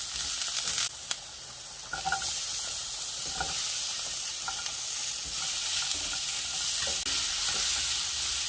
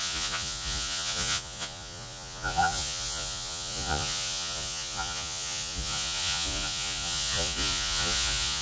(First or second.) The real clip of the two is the first